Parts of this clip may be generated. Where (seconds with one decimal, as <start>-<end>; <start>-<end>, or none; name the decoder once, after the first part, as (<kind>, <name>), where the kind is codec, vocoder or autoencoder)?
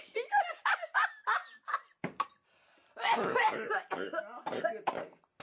none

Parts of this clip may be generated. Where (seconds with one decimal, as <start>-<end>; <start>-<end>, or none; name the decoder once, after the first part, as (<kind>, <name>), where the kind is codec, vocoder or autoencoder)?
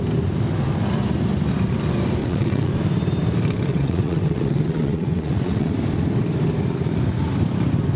2.2-2.7 (vocoder, WaveNeXt); 3.7-5.7